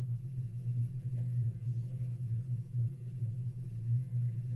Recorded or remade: remade